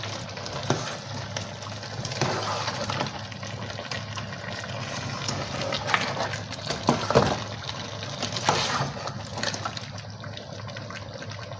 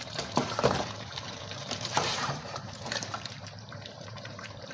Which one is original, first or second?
first